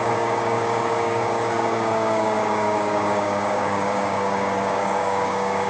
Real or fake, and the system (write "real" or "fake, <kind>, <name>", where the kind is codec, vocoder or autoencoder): fake, codec, DAC